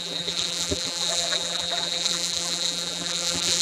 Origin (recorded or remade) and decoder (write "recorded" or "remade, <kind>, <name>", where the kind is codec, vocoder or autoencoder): remade, vocoder, BigVGAN v2